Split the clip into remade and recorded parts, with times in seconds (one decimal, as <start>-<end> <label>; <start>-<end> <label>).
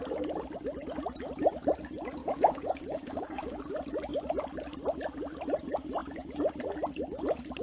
0.0-2.2 recorded; 2.2-3.6 remade; 3.6-7.6 recorded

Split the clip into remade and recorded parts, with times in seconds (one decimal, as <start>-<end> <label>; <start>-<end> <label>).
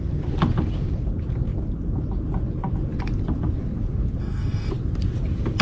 0.0-4.2 recorded; 4.2-4.7 remade; 4.7-5.6 recorded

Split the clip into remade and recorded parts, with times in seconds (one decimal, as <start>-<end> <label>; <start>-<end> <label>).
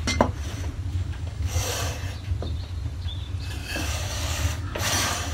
0.0-0.9 recorded; 0.9-1.5 remade; 1.5-3.6 recorded; 3.6-4.8 remade; 4.8-5.3 recorded